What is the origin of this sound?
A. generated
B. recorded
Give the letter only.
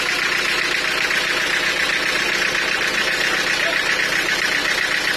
B